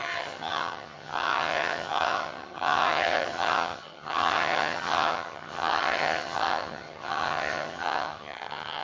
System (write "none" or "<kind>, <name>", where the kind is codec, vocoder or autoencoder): vocoder, HiFi-GAN